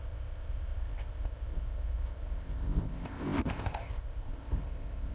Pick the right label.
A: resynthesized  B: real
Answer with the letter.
A